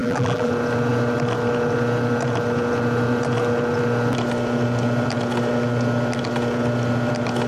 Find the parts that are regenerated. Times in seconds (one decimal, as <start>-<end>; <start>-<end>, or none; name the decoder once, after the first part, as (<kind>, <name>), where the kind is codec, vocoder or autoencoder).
0.0-0.5 (vocoder, BigVGAN v2)